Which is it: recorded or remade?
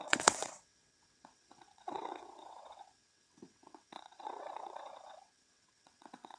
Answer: remade